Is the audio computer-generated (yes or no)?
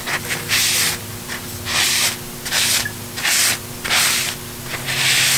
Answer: no